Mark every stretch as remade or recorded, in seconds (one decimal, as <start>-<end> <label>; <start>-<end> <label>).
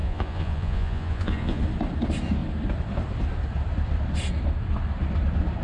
0.0-1.6 remade; 1.6-5.6 recorded